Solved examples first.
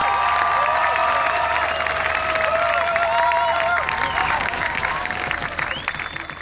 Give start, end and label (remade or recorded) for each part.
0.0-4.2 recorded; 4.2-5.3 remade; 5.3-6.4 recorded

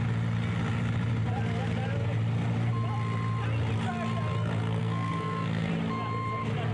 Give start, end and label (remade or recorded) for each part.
0.0-4.8 recorded; 4.8-5.7 remade; 5.7-6.7 recorded

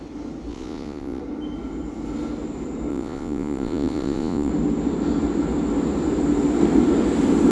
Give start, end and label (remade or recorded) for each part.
0.0-0.5 recorded; 0.5-1.2 remade; 1.2-2.9 recorded; 2.9-4.5 remade; 4.5-7.5 recorded

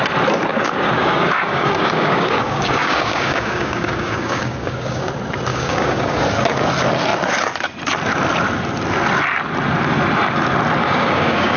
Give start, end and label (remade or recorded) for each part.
0.0-0.5 recorded; 0.5-5.1 remade; 5.1-5.5 recorded; 5.5-6.2 remade; 6.2-10.8 recorded; 10.8-11.6 remade

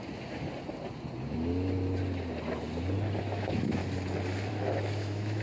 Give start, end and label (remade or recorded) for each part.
0.0-3.2 recorded; 3.2-3.8 remade; 3.8-4.5 recorded; 4.5-5.4 remade

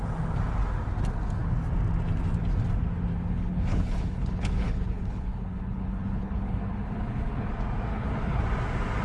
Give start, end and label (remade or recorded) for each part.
0.0-3.1 recorded; 3.1-7.5 remade; 7.5-7.9 recorded; 7.9-8.4 remade; 8.4-9.0 recorded

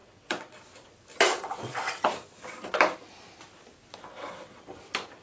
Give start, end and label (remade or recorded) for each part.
0.0-0.6 remade; 0.6-1.3 recorded; 1.3-2.0 remade; 2.0-4.1 recorded; 4.1-4.8 remade; 4.8-5.2 recorded